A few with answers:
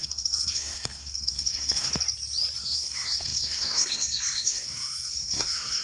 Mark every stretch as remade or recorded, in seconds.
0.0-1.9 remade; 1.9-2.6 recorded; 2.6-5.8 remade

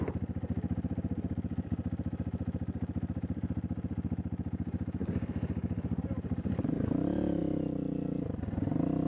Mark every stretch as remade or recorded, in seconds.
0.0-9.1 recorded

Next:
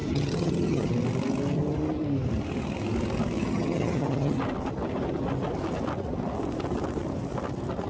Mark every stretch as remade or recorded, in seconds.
0.0-0.9 remade; 0.9-3.4 recorded; 3.4-4.4 remade; 4.4-7.9 recorded

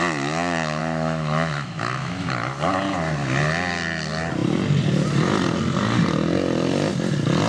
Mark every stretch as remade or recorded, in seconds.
0.0-0.8 recorded; 0.8-2.3 remade; 2.3-7.5 recorded

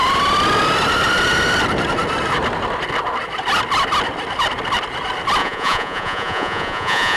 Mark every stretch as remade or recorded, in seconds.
0.0-5.4 recorded; 5.4-7.2 remade